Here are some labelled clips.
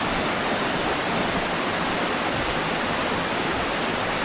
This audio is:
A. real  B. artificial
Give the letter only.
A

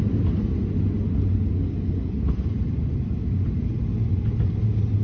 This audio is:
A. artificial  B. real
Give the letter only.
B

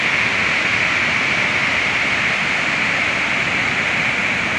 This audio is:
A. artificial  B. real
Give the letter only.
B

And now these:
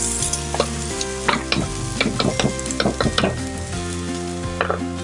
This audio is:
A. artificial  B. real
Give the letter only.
B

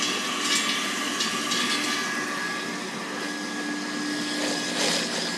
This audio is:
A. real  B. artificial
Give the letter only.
A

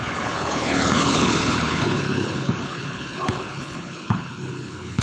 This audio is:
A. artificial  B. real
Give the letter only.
A